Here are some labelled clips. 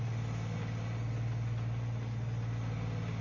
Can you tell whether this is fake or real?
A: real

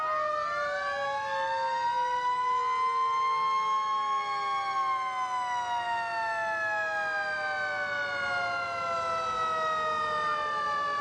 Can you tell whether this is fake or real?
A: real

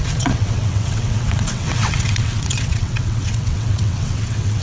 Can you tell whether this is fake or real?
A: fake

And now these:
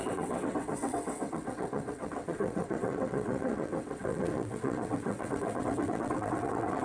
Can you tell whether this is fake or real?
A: fake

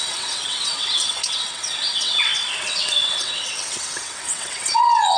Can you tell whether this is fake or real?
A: fake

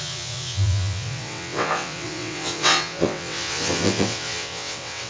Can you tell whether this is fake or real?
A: fake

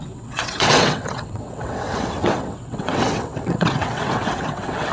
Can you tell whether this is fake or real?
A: fake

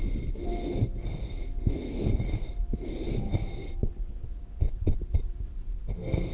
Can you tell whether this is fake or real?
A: real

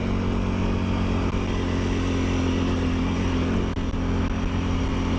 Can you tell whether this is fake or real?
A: real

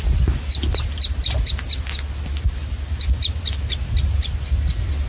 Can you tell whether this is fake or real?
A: real